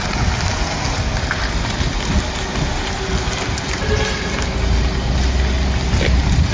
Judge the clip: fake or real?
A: real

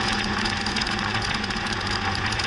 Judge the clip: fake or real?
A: fake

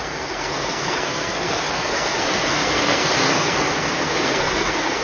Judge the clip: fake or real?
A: fake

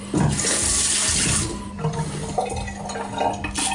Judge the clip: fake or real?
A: real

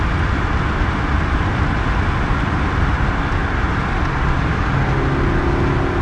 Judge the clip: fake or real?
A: real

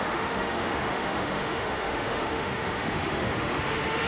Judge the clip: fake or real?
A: fake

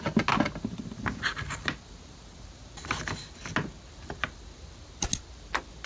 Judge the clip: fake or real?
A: real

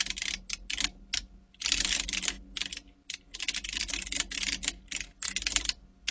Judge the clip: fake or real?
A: real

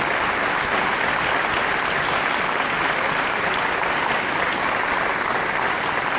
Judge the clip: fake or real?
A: real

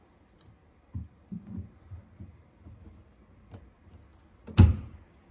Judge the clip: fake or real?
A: real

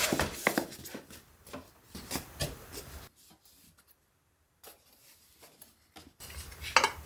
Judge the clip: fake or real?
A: real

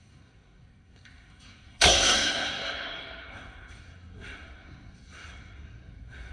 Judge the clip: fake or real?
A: fake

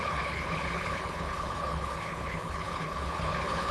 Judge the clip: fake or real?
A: fake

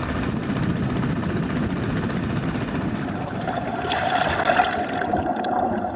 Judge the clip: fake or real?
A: real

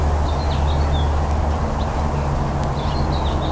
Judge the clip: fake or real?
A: real